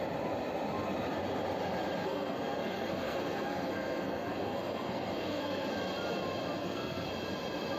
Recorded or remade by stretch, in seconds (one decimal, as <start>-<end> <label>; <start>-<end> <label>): 0.0-2.0 recorded; 2.0-5.7 remade; 5.7-6.6 recorded; 6.6-7.1 remade; 7.1-7.8 recorded